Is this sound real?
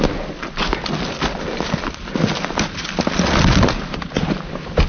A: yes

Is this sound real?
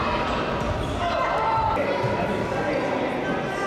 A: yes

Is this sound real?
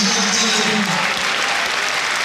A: yes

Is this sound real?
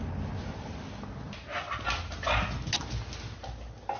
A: yes